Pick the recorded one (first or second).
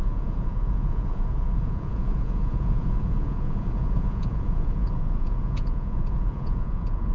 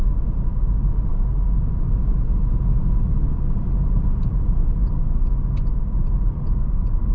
second